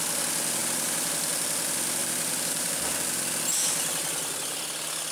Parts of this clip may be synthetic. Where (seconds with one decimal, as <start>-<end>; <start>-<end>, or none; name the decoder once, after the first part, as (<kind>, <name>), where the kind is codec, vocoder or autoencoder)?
0.6-1.1 (vocoder, BigVGAN v2); 2.0-2.7